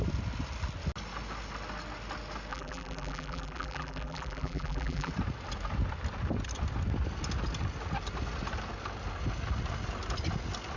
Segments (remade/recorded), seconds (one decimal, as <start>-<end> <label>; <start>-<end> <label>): 0.0-2.5 recorded; 2.5-5.1 remade; 5.1-10.8 recorded